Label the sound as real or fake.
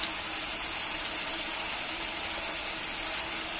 real